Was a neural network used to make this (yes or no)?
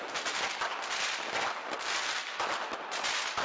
no